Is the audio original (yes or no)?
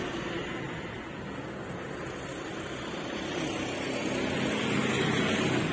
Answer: yes